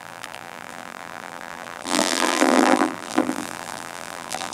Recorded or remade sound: remade